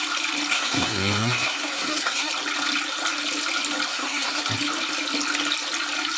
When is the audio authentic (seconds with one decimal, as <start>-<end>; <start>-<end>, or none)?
0.0-0.5; 2.3-3.9; 4.4-6.2